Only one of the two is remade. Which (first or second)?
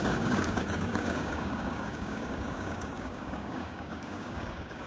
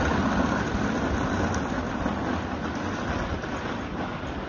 first